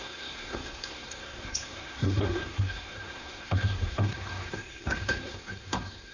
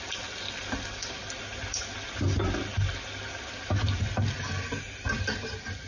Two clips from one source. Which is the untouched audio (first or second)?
second